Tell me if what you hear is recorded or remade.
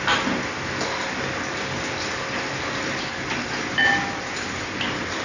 recorded